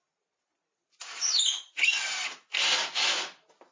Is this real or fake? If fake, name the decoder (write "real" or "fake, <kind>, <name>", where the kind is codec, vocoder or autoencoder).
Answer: real